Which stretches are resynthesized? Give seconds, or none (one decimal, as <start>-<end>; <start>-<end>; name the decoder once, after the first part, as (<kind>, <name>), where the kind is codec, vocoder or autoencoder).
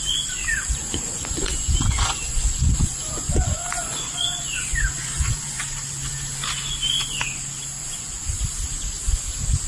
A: 0.8-5.6 (vocoder, Vocos); 7.8-8.4